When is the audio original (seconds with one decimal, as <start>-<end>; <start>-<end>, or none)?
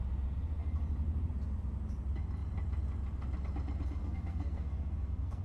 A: 0.0-4.0